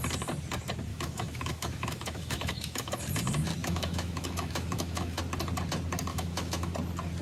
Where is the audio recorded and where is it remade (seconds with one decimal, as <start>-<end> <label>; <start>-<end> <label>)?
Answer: 0.0-0.9 recorded; 0.9-3.0 remade; 3.0-3.6 recorded; 3.6-5.2 remade; 5.2-6.1 recorded; 6.1-6.7 remade; 6.7-7.2 recorded